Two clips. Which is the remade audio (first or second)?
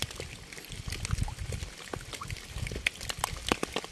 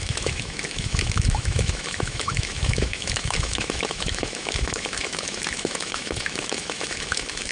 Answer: second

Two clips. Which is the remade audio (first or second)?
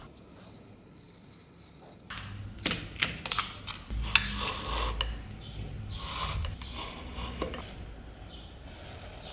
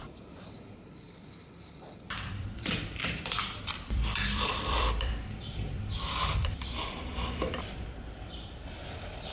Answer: second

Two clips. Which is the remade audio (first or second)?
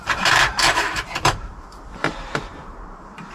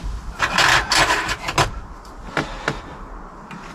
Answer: first